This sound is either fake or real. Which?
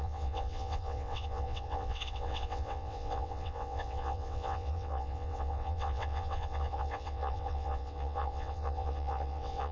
fake